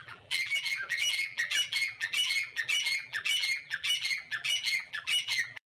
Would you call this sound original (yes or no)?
no